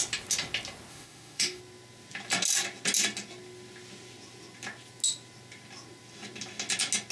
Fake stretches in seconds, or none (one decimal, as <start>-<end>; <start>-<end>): 0.9-1.6